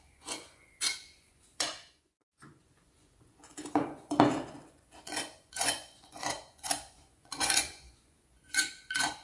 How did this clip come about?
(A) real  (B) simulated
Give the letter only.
B